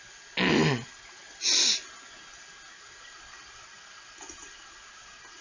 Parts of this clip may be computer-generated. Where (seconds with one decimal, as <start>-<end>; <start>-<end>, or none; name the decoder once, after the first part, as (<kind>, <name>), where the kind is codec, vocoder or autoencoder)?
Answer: none

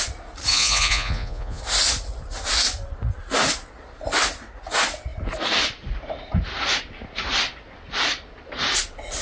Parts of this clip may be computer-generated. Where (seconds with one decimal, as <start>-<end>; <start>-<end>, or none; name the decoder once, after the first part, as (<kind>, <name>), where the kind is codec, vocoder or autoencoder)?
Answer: 0.5-1.6 (vocoder, Vocos)

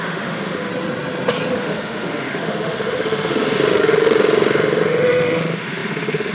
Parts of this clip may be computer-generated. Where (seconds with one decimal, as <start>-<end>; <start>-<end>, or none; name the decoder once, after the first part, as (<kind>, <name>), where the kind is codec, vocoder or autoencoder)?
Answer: 0.0-0.7 (autoencoder, DAC-VAE); 1.5-6.3

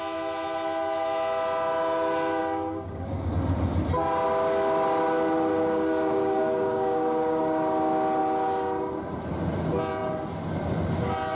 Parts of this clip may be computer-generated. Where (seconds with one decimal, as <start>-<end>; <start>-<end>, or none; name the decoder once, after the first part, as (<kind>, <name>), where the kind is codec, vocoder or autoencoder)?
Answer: 2.4-3.3 (codec, DAC); 5.5-7.4

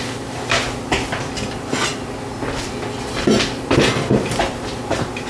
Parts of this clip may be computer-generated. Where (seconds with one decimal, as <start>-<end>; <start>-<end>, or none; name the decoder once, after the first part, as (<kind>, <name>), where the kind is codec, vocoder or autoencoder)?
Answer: none